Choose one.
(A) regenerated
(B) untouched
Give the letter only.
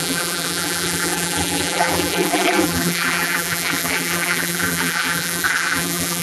A